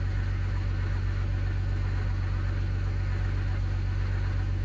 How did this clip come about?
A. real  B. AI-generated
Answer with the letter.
A